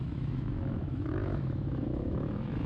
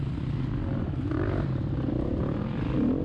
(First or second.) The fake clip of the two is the first